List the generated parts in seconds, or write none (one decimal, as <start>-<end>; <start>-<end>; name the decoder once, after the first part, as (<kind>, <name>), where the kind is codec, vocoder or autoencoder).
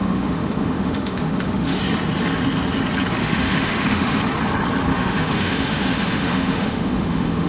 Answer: 0.0-1.8 (autoencoder, DAC-VAE); 3.2-4.2; 4.9-7.5